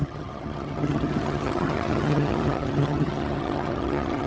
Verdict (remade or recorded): remade